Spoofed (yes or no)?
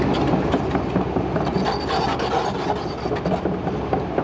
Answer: no